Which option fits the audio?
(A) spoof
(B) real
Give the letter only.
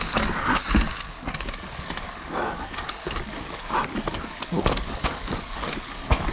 A